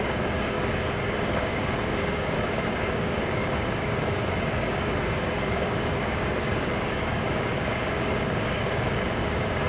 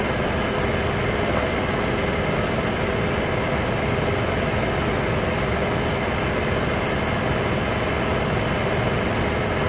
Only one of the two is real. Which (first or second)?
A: second